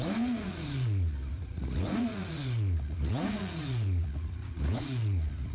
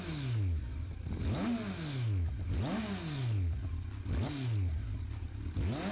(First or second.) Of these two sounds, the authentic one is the second